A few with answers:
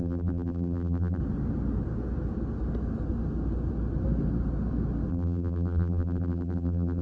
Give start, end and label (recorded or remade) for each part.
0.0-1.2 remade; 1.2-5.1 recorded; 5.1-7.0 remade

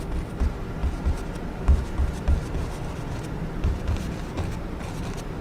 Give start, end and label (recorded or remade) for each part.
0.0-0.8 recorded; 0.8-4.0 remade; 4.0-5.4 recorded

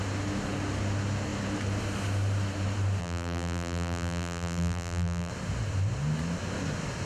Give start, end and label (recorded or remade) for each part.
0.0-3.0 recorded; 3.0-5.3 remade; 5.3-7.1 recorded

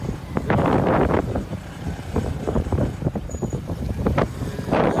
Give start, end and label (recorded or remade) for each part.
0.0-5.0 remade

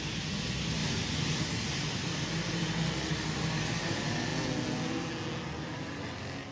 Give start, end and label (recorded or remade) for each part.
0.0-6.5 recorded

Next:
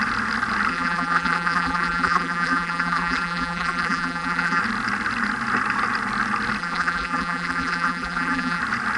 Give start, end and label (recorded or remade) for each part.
0.0-0.7 recorded; 0.7-4.6 remade; 4.6-6.6 recorded; 6.6-8.6 remade; 8.6-9.0 recorded

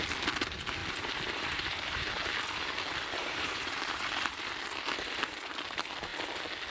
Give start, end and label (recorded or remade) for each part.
0.0-0.8 recorded; 0.8-2.1 remade; 2.1-3.2 recorded; 3.2-4.5 remade; 4.5-6.7 recorded